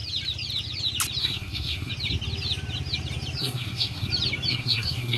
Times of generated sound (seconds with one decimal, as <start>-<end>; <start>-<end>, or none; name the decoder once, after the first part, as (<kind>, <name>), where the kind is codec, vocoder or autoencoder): 1.2-1.9 (codec, SNAC); 3.4-4.1; 4.5-5.2

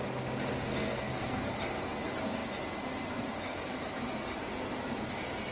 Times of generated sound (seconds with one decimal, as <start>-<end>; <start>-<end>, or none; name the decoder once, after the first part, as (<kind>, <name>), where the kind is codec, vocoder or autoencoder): 0.7-1.4 (codec, SNAC)

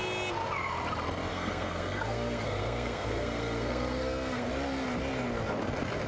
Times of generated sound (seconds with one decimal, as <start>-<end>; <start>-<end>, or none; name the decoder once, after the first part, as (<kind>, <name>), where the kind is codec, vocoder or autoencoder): 1.3-4.5 (codec, SNAC)

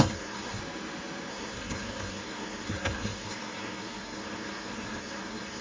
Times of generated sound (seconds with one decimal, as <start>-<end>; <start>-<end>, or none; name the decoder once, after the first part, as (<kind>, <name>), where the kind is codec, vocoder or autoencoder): 0.0-0.6 (codec, SNAC); 1.3-5.6

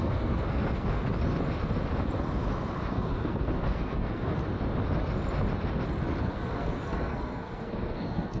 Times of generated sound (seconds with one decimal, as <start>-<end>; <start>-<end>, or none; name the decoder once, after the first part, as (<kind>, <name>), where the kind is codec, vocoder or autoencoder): 0.0-1.0 (codec, SNAC); 2.9-4.4; 6.2-8.4

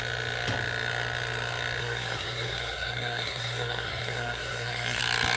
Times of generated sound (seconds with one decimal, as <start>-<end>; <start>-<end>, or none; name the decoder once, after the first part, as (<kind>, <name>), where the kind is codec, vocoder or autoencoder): 1.8-5.0 (codec, SNAC)